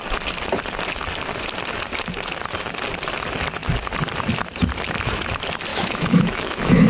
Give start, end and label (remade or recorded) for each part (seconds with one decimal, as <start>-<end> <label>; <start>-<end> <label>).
0.0-5.7 recorded; 5.7-6.9 remade